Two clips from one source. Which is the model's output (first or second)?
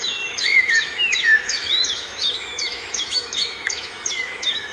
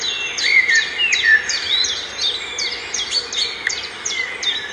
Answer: first